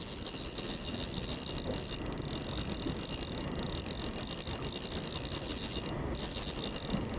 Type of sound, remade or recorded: recorded